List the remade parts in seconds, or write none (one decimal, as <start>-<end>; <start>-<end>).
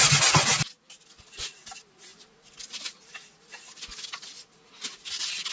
none